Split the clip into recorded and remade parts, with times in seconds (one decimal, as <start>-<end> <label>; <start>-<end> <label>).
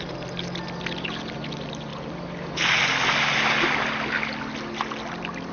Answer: 0.0-5.5 recorded